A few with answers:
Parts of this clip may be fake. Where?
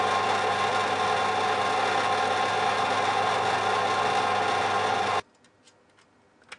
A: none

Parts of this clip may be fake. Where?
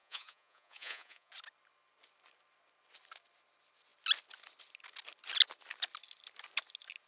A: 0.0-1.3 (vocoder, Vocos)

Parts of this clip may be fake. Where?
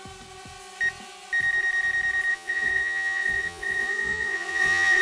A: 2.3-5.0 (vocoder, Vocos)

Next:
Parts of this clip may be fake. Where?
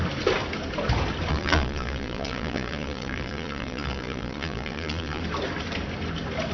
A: 1.3-5.2 (vocoder, Vocos)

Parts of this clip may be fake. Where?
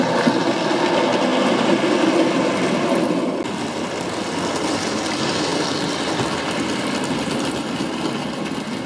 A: none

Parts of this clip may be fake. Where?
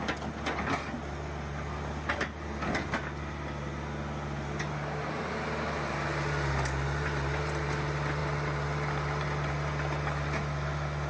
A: none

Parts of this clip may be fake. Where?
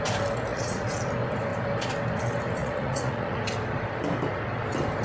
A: 0.5-1.0 (vocoder, Vocos); 2.6-3.4